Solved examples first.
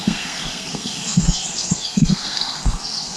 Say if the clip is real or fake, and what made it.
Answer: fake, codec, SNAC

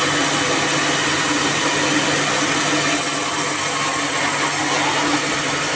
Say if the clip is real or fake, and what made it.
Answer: real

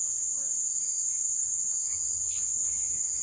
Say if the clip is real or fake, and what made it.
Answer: fake, vocoder, Vocos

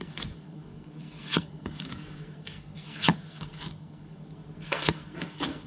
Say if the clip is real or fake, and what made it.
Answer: fake, codec, SNAC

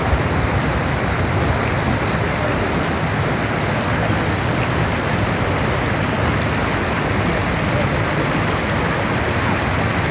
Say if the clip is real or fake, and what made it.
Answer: real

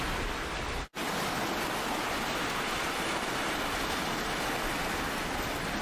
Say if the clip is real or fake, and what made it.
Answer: real